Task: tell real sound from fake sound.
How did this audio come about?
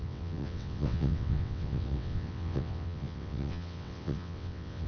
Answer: fake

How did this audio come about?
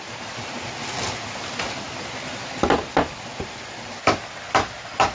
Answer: real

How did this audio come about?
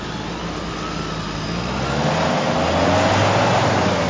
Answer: real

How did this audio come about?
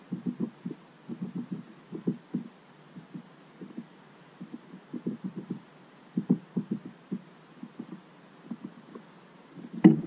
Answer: real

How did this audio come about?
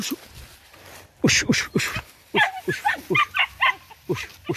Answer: real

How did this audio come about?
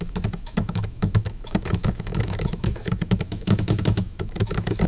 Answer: fake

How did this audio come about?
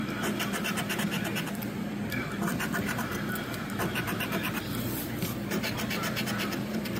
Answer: fake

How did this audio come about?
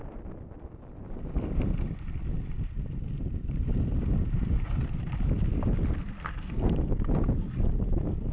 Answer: real